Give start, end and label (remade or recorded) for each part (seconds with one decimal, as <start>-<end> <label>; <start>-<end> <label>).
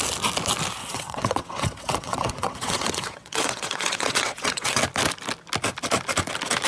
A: 0.0-0.8 recorded; 0.8-4.8 remade; 4.8-6.7 recorded